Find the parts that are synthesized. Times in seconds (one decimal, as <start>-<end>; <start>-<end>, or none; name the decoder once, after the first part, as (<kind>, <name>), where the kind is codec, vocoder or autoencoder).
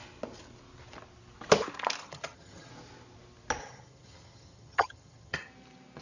2.0-2.7 (vocoder, HiFi-GAN); 3.6-5.5